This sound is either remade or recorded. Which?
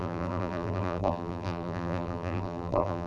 remade